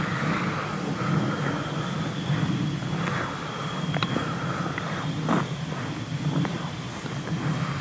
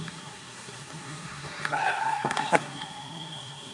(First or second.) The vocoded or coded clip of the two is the second